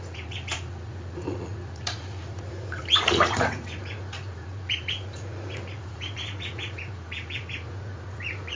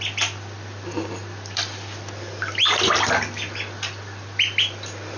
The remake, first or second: first